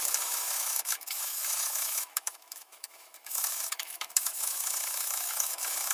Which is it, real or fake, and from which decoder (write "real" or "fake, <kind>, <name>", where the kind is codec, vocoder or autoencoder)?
fake, autoencoder, DAC-VAE